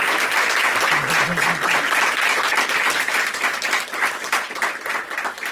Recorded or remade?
recorded